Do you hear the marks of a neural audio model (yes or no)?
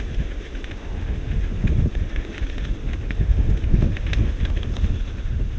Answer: yes